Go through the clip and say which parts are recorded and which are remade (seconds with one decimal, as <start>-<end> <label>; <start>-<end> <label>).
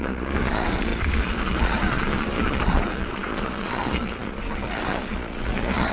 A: 0.0-5.9 remade